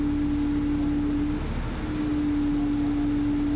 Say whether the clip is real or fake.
real